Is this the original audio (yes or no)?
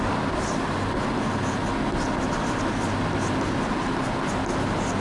yes